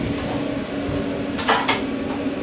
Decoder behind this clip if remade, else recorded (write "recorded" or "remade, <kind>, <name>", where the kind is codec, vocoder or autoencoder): recorded